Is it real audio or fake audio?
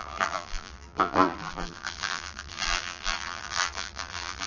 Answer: fake